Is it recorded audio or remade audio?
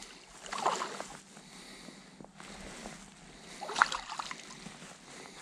recorded